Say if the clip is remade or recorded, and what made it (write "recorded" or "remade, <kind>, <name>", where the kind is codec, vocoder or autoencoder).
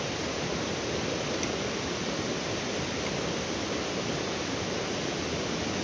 recorded